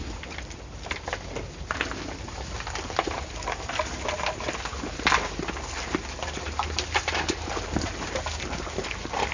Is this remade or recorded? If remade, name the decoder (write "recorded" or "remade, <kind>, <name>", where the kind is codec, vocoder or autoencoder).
recorded